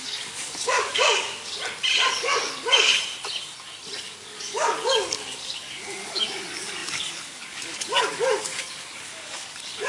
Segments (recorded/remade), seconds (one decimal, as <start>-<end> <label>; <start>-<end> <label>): 0.0-1.6 remade; 1.6-2.1 recorded; 2.1-2.9 remade; 2.9-4.0 recorded; 4.0-9.9 remade